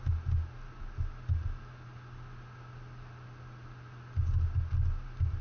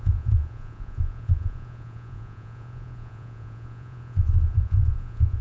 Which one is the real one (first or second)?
first